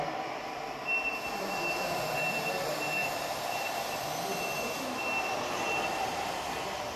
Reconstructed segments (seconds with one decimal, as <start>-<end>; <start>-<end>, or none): 3.0-4.0